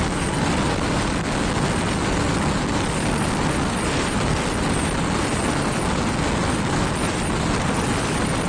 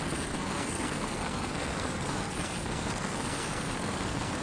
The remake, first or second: second